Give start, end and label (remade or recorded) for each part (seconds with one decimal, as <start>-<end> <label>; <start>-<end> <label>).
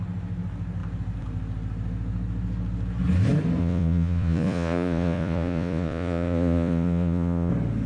0.0-3.6 recorded; 3.6-7.5 remade; 7.5-7.9 recorded